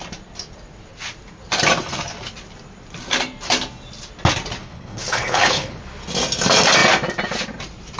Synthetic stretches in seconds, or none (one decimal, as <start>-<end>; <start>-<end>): 4.6-5.8

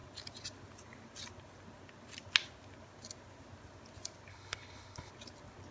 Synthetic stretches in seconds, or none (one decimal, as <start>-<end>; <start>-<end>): 4.3-5.1

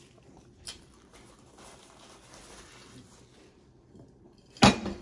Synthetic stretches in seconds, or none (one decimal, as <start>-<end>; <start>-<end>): none